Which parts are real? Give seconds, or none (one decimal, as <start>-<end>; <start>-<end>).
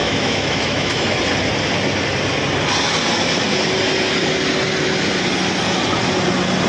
1.2-6.7